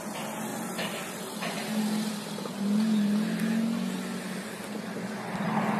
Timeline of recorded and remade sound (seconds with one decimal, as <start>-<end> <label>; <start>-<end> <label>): 0.0-5.8 recorded